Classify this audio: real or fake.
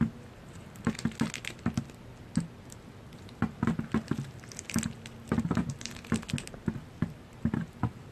real